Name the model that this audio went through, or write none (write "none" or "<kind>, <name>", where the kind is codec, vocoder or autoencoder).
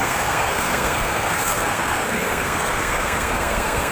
codec, SNAC